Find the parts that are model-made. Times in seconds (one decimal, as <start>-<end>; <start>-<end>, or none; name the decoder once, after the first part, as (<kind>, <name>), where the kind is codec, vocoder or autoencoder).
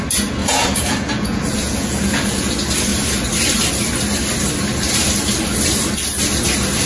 0.4-2.5 (vocoder, Vocos)